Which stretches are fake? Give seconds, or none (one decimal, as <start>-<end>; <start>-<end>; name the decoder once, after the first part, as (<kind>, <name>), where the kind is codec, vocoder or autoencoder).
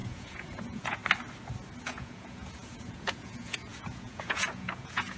0.0-1.0 (vocoder, Vocos); 1.8-5.2